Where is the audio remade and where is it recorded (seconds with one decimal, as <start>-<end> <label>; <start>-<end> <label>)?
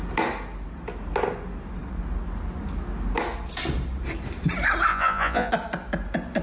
0.0-4.9 recorded; 4.9-5.5 remade; 5.5-6.4 recorded